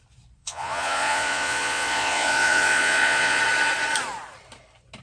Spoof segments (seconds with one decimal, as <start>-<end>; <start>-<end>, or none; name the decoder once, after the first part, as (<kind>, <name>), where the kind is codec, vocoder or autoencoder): 0.4-3.4 (vocoder, Vocos)

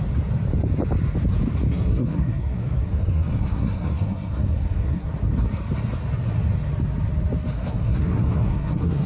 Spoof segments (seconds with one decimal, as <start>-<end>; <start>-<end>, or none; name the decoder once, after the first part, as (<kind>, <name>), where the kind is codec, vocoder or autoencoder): 1.7-5.1 (codec, SNAC); 7.6-9.1

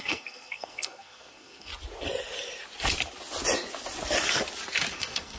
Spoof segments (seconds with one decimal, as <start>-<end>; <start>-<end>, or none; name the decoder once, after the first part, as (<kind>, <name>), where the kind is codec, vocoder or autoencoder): 0.0-1.7 (codec, SNAC); 4.9-5.4

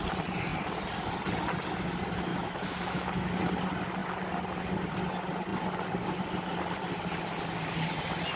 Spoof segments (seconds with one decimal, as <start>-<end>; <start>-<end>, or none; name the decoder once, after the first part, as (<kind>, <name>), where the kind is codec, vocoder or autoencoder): 2.3-3.3 (autoencoder, DAC-VAE)

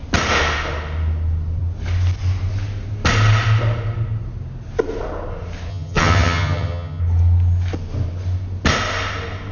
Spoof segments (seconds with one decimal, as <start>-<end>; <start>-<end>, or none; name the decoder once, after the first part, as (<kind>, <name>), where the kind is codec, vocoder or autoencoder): 5.7-7.0 (vocoder, HiFi-GAN)

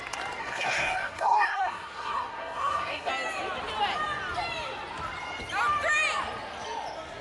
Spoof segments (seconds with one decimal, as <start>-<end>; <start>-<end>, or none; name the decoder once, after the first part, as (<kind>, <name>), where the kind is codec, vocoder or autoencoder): 0.4-3.1 (codec, SNAC)